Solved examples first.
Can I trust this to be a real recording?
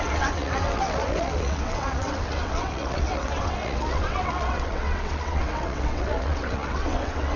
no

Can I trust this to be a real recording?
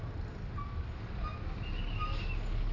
yes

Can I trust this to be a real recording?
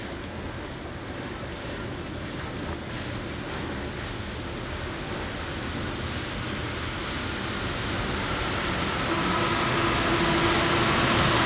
yes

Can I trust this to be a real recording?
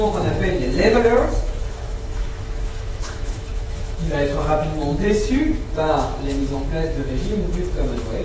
no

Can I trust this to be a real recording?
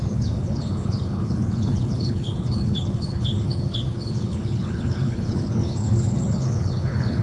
no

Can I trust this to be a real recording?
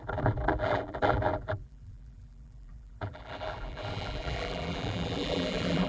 no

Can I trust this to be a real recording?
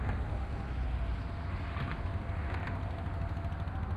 yes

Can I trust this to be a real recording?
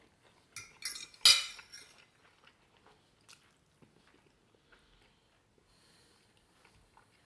yes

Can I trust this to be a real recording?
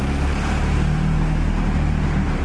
yes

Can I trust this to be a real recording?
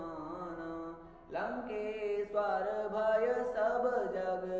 yes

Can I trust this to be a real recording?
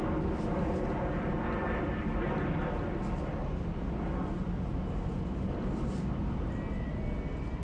yes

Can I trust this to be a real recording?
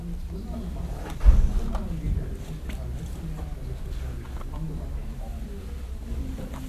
yes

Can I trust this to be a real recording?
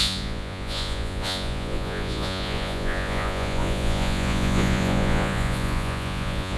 no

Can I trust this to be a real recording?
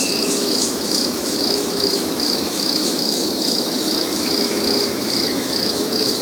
no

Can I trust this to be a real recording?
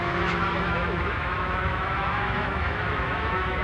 no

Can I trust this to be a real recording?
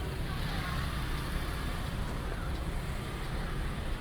no